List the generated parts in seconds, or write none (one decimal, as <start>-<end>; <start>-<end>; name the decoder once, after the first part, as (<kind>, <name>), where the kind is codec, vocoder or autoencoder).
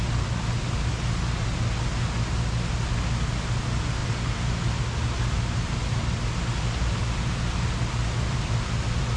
none